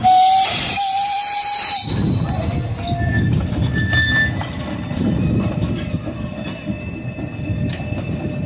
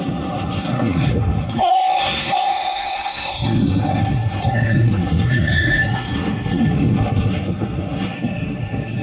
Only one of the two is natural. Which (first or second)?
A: first